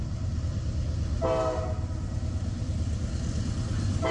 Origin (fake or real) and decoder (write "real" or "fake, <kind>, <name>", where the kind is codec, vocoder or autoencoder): real